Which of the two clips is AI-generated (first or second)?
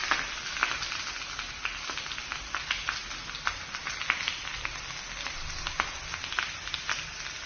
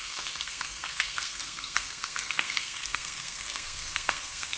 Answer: second